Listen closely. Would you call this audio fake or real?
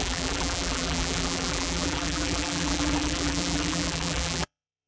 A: fake